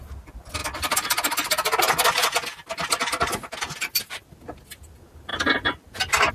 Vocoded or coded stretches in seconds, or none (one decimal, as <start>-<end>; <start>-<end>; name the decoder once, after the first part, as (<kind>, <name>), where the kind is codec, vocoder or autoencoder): none

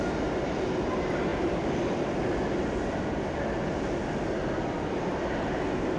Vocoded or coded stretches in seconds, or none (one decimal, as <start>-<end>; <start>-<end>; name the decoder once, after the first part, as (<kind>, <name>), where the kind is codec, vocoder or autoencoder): none